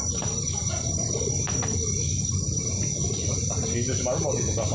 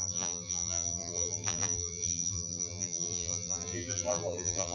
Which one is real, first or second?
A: first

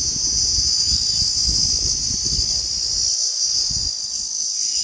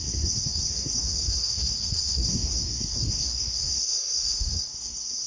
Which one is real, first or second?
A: first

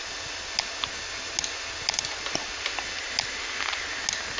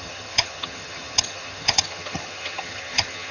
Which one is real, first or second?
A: first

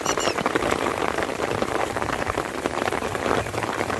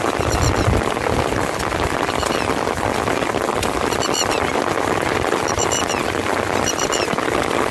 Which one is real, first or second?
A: second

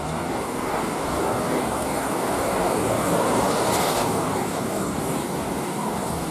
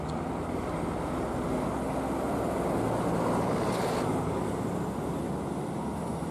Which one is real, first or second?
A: second